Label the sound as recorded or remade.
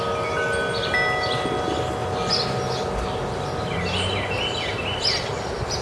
recorded